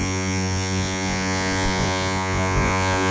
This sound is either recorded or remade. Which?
remade